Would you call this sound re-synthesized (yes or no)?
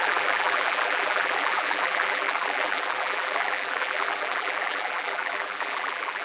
yes